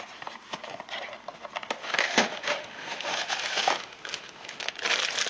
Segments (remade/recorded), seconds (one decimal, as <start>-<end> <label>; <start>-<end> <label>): 0.0-1.8 recorded; 1.8-4.7 remade; 4.7-5.3 recorded